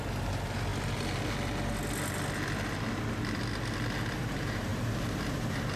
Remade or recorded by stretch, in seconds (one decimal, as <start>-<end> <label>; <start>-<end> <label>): 0.0-0.7 remade; 0.7-4.2 recorded; 4.2-4.7 remade; 4.7-5.3 recorded; 5.3-5.8 remade